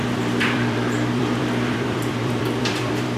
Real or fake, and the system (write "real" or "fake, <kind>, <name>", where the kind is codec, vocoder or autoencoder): fake, vocoder, BigVGAN v2